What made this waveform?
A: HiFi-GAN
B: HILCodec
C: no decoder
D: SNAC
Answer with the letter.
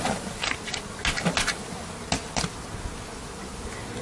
C